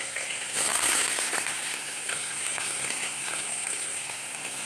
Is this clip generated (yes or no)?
yes